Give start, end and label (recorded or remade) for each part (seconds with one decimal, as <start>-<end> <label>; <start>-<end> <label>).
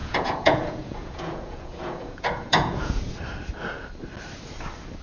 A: 0.0-3.0 remade; 3.0-5.0 recorded